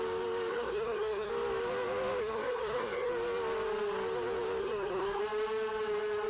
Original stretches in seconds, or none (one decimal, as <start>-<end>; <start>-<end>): 0.0-0.5; 1.3-2.2; 3.1-4.6; 5.2-6.3